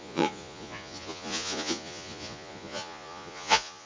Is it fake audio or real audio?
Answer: fake